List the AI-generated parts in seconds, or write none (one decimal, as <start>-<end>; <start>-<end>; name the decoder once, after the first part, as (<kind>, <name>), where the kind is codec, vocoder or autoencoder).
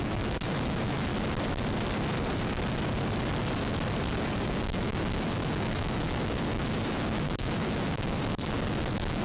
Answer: 0.0-1.1 (autoencoder, DAC-VAE); 4.5-9.2